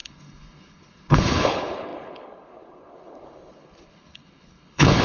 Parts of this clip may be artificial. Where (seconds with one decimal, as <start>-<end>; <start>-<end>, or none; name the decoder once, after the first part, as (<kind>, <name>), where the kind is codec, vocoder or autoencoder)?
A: 0.0-5.0 (codec, HILCodec)